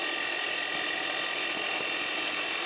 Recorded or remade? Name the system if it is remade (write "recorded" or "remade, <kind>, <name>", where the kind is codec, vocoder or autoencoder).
recorded